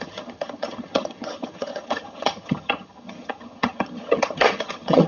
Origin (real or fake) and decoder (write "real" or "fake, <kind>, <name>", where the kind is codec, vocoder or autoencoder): fake, vocoder, HiFi-GAN